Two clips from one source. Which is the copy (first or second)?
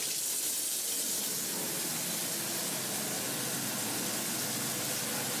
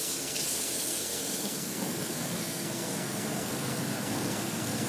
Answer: second